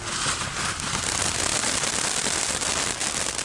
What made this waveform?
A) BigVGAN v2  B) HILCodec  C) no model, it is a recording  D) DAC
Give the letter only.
A